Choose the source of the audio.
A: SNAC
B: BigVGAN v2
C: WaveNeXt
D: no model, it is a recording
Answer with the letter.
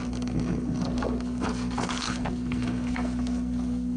A